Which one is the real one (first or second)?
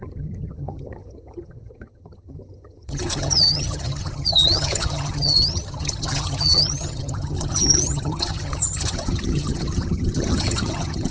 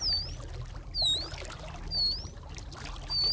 second